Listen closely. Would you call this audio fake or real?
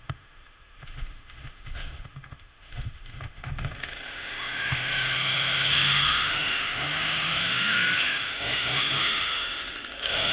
fake